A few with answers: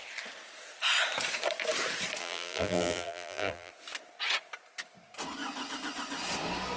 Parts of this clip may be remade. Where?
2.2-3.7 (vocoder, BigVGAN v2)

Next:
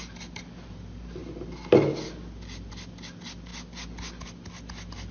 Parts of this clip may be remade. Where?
none

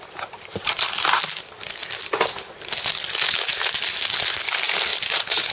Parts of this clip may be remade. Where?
4.9-5.5 (vocoder, BigVGAN v2)

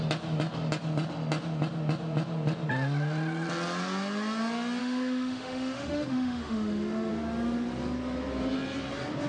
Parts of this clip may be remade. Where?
4.8-7.1 (autoencoder, DAC-VAE)

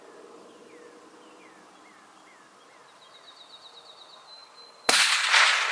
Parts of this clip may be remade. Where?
none